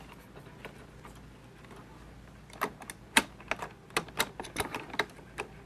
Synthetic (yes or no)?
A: no